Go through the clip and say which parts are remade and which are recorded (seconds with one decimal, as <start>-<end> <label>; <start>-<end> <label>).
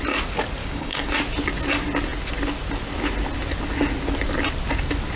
0.0-0.6 recorded; 0.6-1.1 remade; 1.1-5.2 recorded